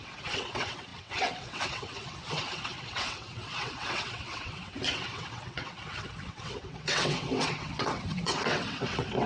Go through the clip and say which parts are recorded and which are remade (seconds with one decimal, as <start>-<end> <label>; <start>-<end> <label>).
0.0-9.3 remade